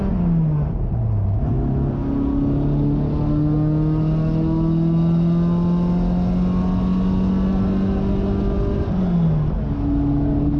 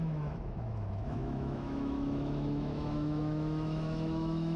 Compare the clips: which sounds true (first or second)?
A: first